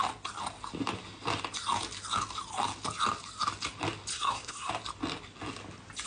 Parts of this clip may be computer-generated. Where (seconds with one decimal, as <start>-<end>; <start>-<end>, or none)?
4.1-4.7